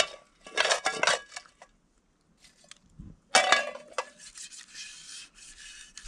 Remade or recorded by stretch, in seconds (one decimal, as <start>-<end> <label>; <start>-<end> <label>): 0.0-6.1 recorded